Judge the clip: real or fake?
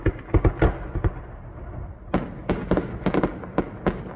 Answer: real